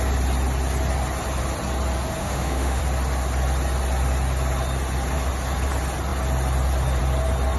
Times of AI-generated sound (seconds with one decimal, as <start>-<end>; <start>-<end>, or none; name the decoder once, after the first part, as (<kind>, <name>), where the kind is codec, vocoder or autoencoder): 2.2-2.8 (autoencoder, DAC-VAE)